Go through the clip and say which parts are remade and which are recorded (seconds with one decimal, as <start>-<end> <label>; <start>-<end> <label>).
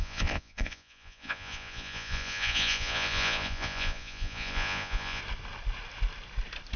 0.0-5.2 remade; 5.2-6.8 recorded